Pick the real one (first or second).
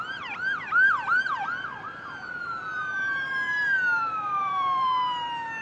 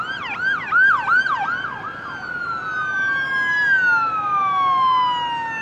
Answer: second